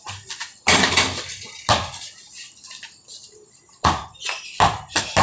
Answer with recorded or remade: recorded